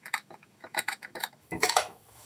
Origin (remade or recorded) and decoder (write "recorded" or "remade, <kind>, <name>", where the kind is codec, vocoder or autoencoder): remade, autoencoder, DAC-VAE